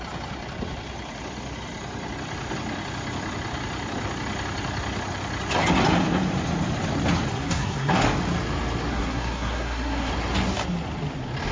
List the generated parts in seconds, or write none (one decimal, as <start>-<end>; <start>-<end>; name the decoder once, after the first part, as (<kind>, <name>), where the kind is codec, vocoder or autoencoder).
7.3-8.0 (codec, SNAC); 8.9-10.1